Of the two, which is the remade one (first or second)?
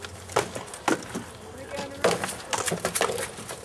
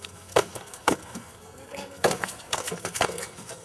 second